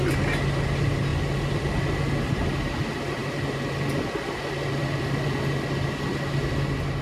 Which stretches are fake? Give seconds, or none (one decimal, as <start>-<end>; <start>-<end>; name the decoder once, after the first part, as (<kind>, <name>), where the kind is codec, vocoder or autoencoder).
none

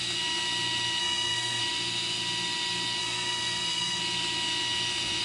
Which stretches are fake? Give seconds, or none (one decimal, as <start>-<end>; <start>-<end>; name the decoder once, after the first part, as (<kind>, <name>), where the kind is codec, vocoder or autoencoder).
1.0-1.6 (codec, SNAC); 3.0-4.0

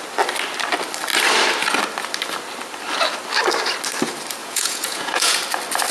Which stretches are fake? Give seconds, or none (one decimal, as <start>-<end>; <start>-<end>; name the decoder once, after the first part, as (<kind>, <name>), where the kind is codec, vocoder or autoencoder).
4.4-5.4 (vocoder, Vocos)